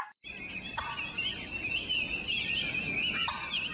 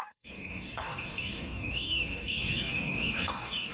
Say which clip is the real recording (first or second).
first